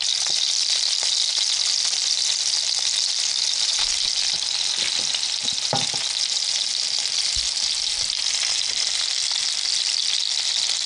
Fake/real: real